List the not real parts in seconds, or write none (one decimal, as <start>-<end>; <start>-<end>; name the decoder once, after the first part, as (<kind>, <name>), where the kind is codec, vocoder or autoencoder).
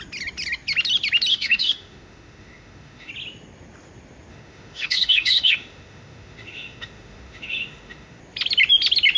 1.3-3.1 (autoencoder, DAC-VAE); 4.3-8.2